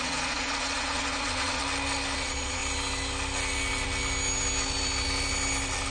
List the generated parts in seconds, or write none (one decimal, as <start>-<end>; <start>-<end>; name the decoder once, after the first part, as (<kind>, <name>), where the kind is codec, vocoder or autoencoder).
0.0-1.6 (vocoder, Vocos); 2.2-2.6